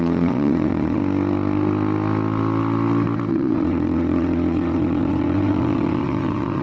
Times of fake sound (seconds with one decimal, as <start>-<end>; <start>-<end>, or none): 0.0-1.0; 3.3-6.6